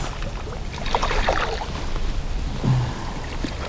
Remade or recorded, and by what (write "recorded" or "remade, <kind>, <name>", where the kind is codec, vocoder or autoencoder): recorded